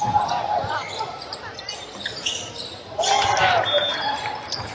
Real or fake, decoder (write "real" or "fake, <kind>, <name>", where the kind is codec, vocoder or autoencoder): real